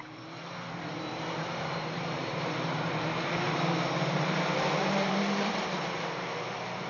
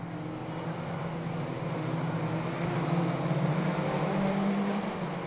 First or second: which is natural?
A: second